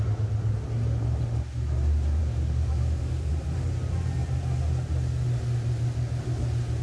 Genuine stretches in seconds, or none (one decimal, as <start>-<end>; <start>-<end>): 0.0-2.2; 3.3-6.8